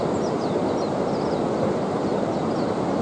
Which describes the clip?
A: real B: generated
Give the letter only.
A